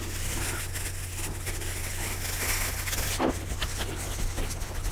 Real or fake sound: real